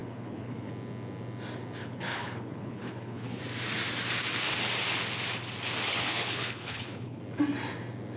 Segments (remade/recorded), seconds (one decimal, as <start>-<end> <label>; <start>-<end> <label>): 0.0-0.7 remade; 0.7-1.8 recorded; 1.8-3.4 remade; 3.4-5.9 recorded; 5.9-7.2 remade; 7.2-8.2 recorded

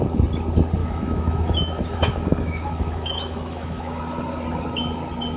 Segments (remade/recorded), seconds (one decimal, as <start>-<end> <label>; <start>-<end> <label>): 0.0-0.8 recorded; 0.8-4.0 remade; 4.0-5.4 recorded